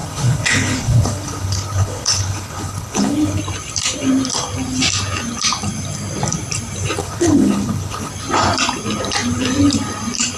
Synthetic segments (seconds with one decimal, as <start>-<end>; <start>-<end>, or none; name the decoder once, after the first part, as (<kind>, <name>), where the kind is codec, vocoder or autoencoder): 0.0-3.4 (codec, HILCodec); 7.0-8.1